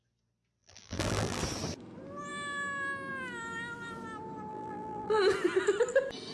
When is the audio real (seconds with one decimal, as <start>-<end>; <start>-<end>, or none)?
0.0-0.6; 1.4-4.5; 5.2-6.3